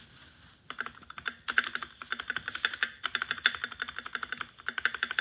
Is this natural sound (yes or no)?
yes